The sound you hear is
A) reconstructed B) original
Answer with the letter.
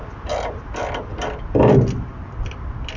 B